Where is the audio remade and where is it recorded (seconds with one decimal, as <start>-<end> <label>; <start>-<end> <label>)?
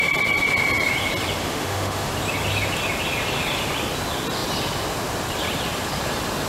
0.0-1.4 recorded; 1.4-2.1 remade; 2.1-6.5 recorded